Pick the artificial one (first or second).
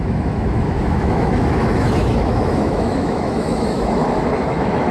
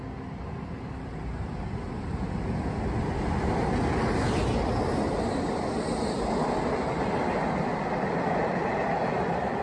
first